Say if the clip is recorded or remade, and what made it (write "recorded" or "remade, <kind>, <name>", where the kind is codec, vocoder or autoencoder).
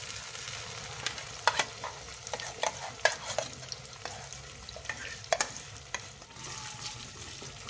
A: recorded